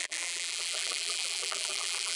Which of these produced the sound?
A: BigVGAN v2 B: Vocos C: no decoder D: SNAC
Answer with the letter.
A